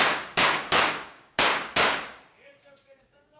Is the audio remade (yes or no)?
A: yes